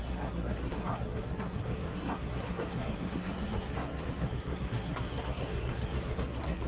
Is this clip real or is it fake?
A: fake